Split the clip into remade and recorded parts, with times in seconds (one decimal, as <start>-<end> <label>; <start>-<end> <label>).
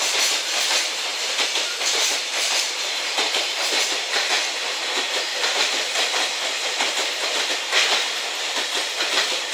0.0-1.1 recorded; 1.1-4.5 remade; 4.5-5.3 recorded; 5.3-7.4 remade; 7.4-9.5 recorded